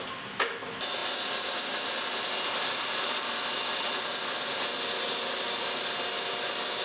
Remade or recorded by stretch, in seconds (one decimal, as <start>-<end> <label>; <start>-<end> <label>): 0.0-6.8 recorded